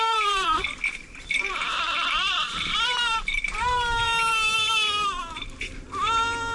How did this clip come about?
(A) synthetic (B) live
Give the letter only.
A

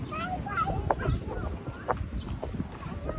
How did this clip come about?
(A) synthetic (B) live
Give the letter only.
B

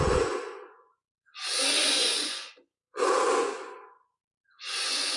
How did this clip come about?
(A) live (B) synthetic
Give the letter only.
B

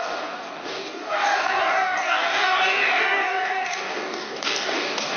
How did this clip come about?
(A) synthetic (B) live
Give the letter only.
A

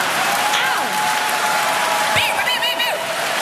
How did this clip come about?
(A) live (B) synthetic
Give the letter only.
B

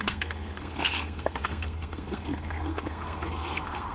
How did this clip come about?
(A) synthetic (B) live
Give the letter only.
A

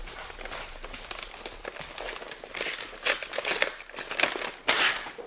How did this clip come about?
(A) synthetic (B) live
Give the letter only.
B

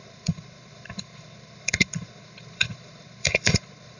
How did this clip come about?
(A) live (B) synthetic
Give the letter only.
B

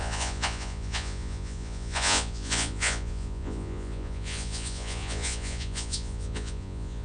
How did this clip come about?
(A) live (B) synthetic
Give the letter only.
B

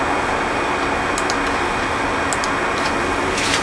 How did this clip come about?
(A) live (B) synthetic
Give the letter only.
A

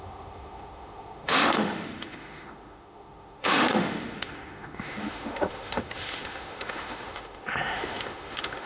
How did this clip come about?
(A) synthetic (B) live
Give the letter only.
A